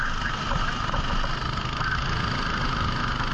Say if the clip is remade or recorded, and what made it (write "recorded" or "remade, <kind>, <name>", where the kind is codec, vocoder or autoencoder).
recorded